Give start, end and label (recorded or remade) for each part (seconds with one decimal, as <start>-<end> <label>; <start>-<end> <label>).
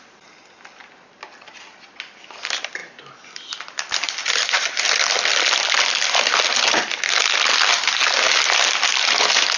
0.0-9.6 recorded